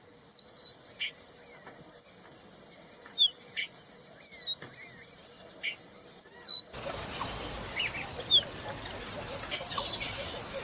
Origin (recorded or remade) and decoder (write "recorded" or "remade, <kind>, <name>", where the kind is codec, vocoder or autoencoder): recorded